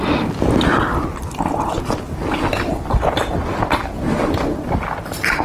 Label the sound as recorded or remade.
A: recorded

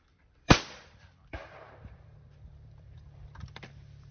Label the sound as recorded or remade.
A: remade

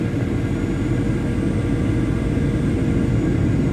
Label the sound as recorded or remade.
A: recorded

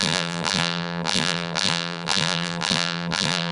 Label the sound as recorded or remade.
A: remade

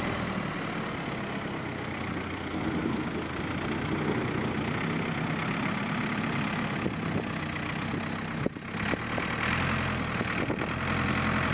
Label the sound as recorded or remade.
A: recorded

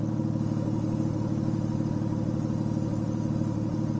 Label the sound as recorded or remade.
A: remade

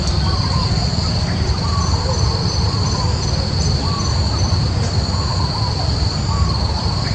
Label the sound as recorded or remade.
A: remade